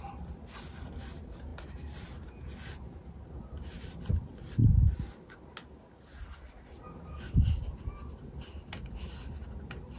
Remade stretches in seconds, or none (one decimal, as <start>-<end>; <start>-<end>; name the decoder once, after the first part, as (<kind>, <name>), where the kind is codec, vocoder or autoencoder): none